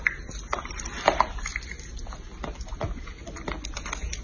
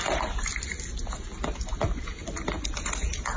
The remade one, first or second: second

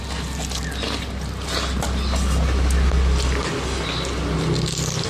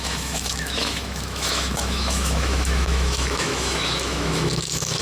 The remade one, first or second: second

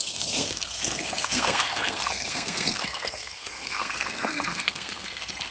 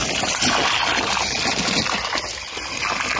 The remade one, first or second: first